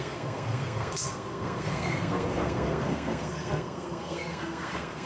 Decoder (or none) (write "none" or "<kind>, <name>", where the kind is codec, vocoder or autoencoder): codec, SNAC